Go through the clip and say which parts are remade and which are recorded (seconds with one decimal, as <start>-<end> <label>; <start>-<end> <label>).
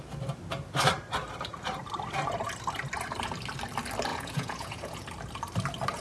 0.0-4.1 recorded; 4.1-5.0 remade; 5.0-6.0 recorded